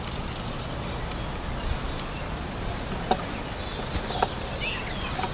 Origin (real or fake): real